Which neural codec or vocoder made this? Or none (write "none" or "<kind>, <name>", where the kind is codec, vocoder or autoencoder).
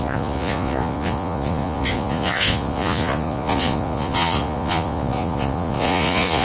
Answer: vocoder, Vocos